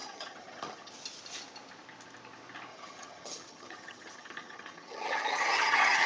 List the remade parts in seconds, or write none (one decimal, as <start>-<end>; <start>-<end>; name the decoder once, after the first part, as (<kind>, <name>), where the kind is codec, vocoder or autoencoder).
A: 0.0-0.9 (vocoder, HiFi-GAN); 2.7-6.1